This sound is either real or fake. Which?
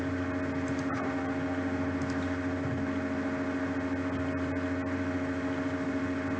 real